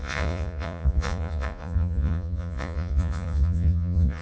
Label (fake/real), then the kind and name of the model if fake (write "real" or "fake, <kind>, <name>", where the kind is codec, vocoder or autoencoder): fake, vocoder, Vocos